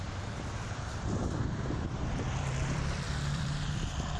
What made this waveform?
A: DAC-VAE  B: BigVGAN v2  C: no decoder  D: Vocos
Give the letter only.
B